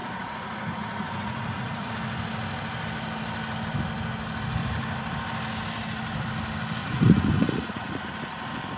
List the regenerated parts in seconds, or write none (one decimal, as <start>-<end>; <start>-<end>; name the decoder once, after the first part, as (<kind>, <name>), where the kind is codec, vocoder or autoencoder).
0.0-1.9 (vocoder, Vocos); 6.8-8.0